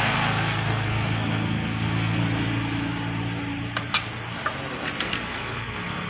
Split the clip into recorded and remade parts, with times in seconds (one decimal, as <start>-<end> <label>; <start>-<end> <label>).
0.0-2.2 remade; 2.2-5.0 recorded; 5.0-6.1 remade